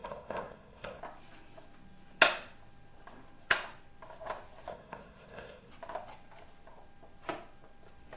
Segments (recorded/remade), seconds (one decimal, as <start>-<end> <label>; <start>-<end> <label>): 0.0-1.0 remade; 1.0-4.7 recorded; 4.7-5.7 remade; 5.7-8.2 recorded